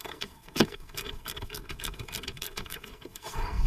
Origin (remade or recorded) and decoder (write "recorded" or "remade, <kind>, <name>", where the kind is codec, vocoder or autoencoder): remade, codec, SNAC